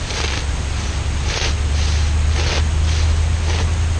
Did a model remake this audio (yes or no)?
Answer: no